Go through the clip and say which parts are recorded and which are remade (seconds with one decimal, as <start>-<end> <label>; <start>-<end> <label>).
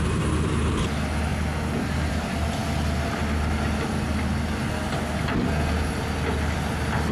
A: 0.0-7.1 recorded